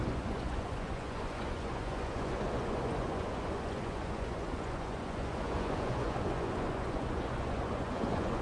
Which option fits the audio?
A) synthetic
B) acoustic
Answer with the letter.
A